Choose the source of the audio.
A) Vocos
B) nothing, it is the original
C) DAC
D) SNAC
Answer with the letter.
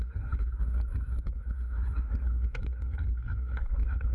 D